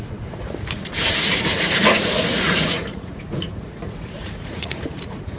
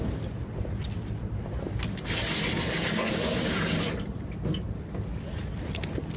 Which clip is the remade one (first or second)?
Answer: first